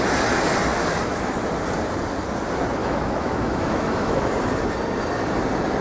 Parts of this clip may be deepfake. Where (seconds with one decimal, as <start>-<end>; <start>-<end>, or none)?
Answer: 2.8-4.3